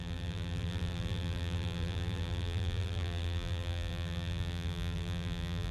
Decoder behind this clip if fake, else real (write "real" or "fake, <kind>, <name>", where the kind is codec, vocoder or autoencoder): fake, vocoder, BigVGAN v2